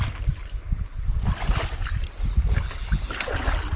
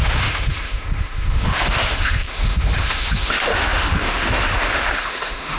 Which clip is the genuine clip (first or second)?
first